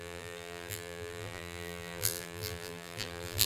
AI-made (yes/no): yes